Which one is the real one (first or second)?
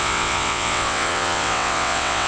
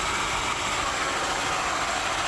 second